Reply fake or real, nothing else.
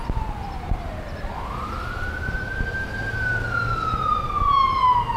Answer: real